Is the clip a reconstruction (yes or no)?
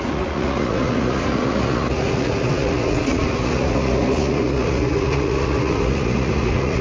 yes